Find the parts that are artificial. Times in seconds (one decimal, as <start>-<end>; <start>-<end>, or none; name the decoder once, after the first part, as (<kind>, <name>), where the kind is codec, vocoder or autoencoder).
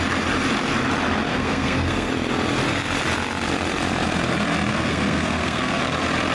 1.3-2.1 (codec, SNAC); 4.7-5.8